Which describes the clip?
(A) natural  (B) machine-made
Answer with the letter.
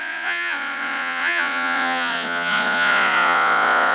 B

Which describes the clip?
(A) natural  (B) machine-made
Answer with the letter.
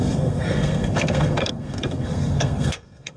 B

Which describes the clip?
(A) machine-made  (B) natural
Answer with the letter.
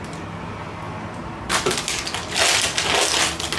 B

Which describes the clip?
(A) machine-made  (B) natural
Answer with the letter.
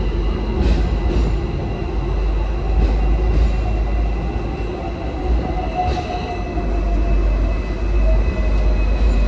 B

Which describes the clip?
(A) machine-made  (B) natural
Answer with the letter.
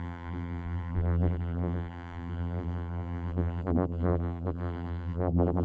A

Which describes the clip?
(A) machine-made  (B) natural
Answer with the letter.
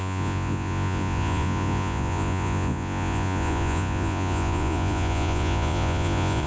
A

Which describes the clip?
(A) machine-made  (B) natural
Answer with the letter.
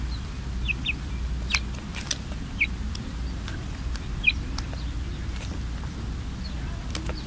B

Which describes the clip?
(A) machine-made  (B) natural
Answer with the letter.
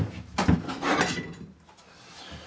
B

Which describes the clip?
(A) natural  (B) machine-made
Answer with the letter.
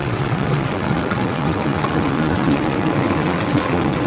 B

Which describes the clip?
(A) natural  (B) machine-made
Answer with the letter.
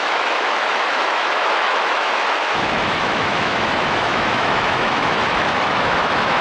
B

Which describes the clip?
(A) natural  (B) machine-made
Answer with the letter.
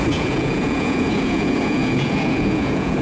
B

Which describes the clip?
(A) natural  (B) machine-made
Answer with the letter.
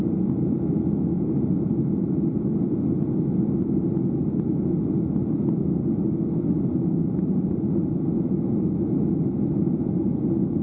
A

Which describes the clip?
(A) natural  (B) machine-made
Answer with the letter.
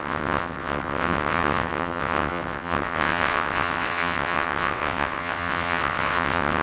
B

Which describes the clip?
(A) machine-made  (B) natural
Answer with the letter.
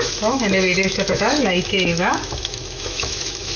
A